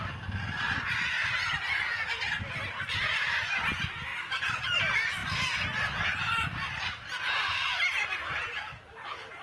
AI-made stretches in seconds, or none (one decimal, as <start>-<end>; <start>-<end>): none